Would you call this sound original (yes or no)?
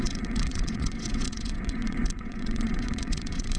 no